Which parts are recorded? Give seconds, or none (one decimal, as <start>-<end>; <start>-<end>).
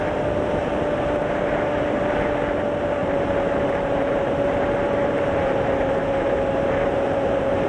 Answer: 0.0-0.6; 2.0-3.0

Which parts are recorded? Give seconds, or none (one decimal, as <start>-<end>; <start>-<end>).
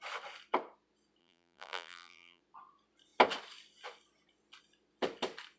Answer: 0.0-1.2; 2.4-5.6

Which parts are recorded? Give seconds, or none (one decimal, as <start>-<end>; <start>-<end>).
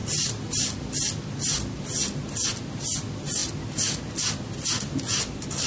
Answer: 0.6-5.7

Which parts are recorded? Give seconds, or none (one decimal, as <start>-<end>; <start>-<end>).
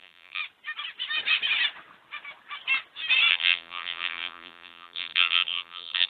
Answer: 0.4-3.3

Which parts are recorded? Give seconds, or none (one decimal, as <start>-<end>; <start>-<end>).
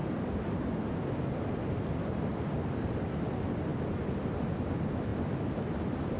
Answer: 0.0-6.2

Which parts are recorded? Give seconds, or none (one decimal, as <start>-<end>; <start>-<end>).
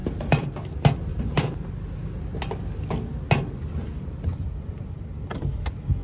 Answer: 0.5-1.1; 1.7-6.0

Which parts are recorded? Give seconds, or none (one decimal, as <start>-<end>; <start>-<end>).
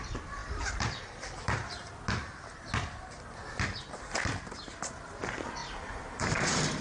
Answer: 0.0-0.4; 1.9-5.6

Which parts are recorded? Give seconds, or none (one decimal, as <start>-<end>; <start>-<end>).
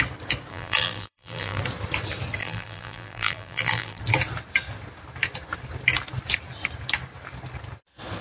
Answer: 0.0-0.5; 1.6-2.4; 4.0-8.2